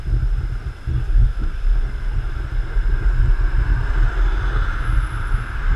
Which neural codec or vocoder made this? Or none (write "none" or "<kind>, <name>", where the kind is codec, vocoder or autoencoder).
none